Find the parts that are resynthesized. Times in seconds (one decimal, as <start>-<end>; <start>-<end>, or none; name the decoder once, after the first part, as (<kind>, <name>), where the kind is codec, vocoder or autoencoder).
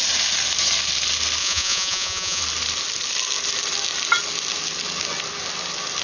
1.4-2.4 (vocoder, Vocos)